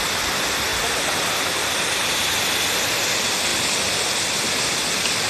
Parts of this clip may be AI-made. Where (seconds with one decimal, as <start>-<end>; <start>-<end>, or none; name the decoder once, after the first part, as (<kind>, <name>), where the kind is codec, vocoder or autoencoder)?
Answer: none